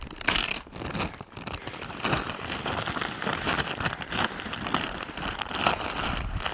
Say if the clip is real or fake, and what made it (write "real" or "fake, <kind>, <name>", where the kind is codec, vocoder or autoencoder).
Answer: fake, vocoder, BigVGAN v2